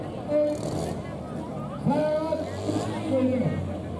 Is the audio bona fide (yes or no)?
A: yes